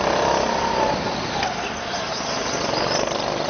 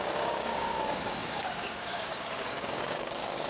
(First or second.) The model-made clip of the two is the second